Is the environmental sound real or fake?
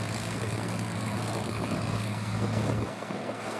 fake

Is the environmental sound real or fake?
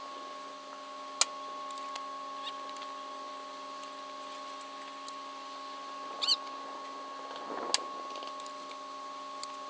real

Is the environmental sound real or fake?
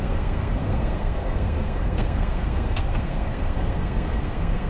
fake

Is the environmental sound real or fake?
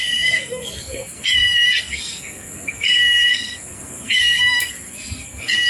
fake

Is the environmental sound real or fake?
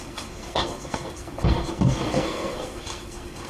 fake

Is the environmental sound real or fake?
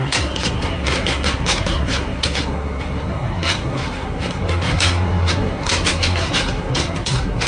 fake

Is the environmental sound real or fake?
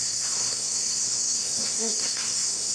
fake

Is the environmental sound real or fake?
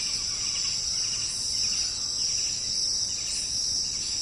real